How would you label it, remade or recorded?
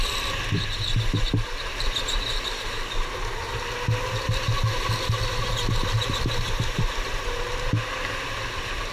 recorded